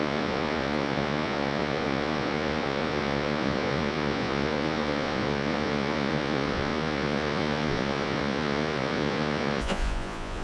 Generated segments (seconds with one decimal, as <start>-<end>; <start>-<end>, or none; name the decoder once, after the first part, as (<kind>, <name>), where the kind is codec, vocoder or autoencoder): 0.0-10.4 (vocoder, Vocos)

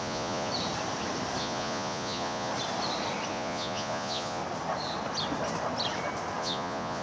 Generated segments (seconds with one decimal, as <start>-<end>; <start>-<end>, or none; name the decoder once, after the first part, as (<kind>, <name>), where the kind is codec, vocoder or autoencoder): 0.0-0.5 (vocoder, Vocos); 1.4-2.5; 3.3-4.4; 6.4-7.0

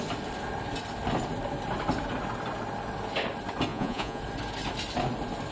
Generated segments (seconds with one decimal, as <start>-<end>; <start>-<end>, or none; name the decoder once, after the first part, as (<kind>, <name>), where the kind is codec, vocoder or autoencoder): 3.7-4.2 (vocoder, Vocos)

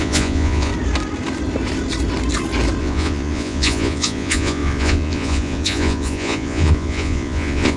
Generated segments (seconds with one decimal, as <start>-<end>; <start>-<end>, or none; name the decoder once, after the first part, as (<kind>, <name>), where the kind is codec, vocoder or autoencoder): 0.0-0.7 (vocoder, Vocos); 2.8-7.8

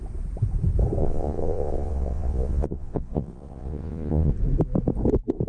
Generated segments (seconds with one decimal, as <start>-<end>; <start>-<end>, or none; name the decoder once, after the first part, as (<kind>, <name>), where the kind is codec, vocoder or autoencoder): 1.0-4.3 (vocoder, Vocos)